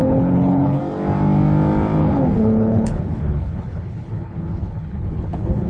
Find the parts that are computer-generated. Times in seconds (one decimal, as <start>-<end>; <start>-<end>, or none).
0.0-0.8; 2.0-5.7